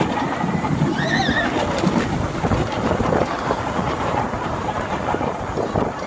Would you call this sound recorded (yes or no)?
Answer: yes